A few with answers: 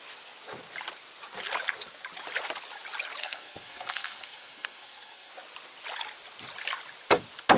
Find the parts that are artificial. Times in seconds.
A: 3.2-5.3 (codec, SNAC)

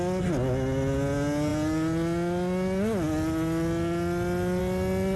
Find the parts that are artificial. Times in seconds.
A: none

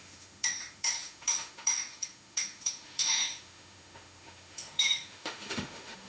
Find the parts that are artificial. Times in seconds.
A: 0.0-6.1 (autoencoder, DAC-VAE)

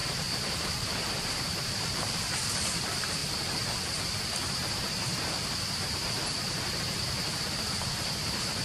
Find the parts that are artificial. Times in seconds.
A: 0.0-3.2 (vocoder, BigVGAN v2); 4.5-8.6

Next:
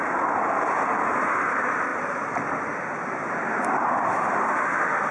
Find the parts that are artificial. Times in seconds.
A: none

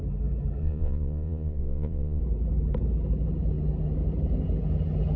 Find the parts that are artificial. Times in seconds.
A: 0.6-2.2 (vocoder, Vocos)

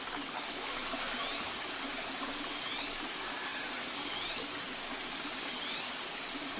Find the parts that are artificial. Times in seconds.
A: none